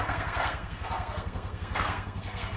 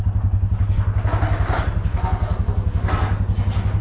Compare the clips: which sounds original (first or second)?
second